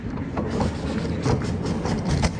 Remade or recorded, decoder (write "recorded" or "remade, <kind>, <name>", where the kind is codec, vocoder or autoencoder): recorded